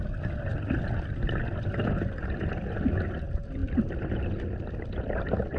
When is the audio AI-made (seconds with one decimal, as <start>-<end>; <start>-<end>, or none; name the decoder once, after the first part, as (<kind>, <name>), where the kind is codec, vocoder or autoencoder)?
3.6-4.8 (vocoder, BigVGAN v2)

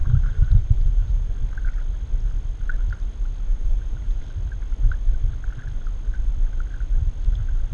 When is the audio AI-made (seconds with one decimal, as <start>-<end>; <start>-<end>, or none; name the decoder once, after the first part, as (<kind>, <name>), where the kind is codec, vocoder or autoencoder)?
0.0-1.3 (vocoder, BigVGAN v2); 3.5-4.2

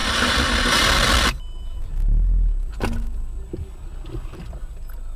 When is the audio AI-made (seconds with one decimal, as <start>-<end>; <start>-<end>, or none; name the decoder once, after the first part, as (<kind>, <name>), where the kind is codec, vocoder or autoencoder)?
none

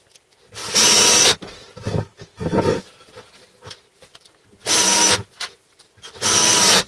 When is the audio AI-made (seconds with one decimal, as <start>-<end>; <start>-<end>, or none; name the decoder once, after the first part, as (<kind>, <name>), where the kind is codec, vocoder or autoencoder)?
0.0-0.6 (vocoder, BigVGAN v2); 2.0-2.4; 6.4-6.9

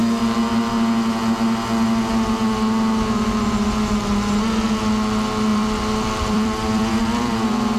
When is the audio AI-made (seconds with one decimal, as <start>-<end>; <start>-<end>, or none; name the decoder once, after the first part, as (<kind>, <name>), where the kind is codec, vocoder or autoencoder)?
5.5-7.8 (vocoder, BigVGAN v2)

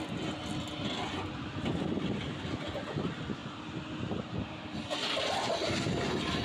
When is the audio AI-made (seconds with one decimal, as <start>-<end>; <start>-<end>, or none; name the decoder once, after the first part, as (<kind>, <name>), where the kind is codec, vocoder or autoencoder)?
none

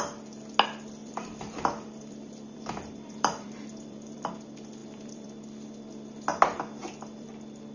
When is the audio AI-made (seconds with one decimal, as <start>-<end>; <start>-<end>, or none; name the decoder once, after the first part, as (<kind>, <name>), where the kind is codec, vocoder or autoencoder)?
1.0-4.3 (vocoder, BigVGAN v2); 4.8-5.4; 6.8-7.3